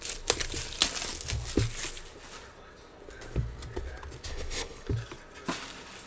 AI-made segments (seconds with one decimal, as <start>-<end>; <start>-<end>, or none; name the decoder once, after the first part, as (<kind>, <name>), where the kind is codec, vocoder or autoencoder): 4.3-4.9 (codec, HILCodec)